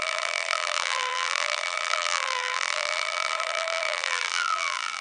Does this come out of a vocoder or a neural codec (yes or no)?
yes